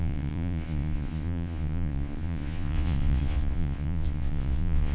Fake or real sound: fake